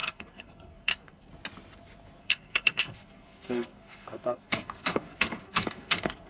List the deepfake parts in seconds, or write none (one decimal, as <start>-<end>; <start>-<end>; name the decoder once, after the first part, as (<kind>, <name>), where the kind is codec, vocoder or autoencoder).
0.0-1.3 (codec, SNAC); 2.2-6.3